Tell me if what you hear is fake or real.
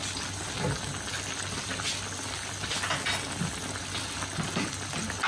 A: real